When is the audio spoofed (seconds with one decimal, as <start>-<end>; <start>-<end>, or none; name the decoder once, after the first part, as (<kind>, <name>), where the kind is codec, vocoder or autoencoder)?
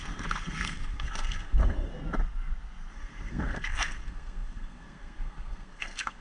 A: 0.0-1.9 (codec, SNAC); 2.9-6.2